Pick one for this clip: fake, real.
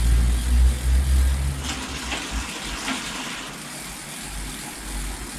real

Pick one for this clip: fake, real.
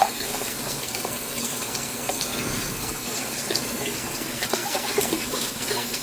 fake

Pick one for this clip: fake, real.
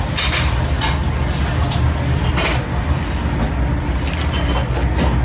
real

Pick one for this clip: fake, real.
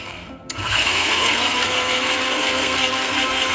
fake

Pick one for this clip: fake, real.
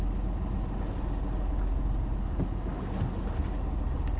real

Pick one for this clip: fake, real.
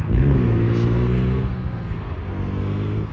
fake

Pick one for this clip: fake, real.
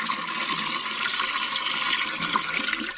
real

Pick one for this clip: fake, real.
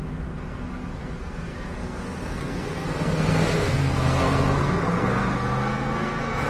fake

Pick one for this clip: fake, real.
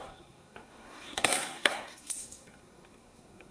fake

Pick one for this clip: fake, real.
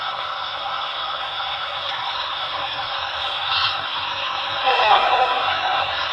fake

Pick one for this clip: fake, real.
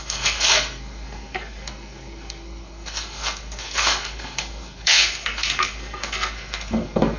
fake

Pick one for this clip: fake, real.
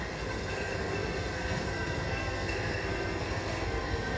fake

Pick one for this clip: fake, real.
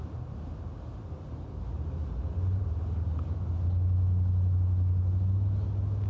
real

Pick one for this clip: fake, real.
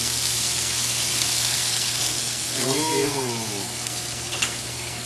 fake